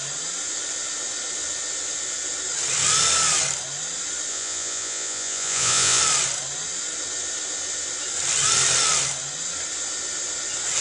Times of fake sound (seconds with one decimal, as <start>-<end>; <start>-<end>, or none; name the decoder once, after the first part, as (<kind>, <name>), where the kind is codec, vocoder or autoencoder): 4.3-6.0 (vocoder, Vocos)